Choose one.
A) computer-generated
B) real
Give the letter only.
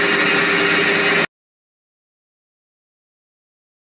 B